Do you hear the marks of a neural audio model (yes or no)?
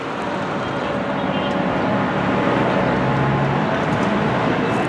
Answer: no